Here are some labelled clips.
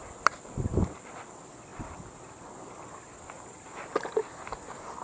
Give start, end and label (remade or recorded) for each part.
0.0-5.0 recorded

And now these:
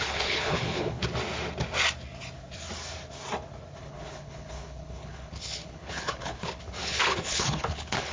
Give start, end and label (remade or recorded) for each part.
0.0-1.0 remade; 1.0-3.8 recorded; 3.8-8.1 remade

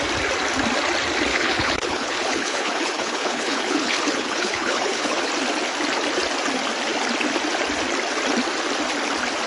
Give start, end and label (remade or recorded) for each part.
0.0-1.3 recorded; 1.3-5.3 remade; 5.3-9.5 recorded